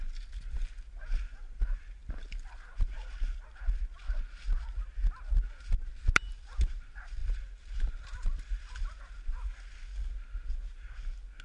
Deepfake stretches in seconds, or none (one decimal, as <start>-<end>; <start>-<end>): 7.2-8.8